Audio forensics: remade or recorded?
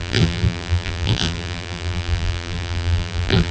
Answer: remade